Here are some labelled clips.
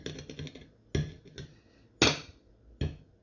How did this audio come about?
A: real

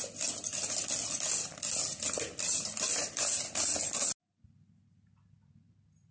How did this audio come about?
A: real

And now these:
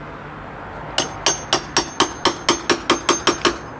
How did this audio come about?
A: real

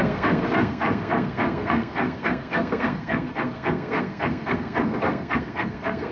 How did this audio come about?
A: fake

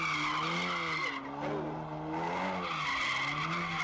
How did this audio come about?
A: real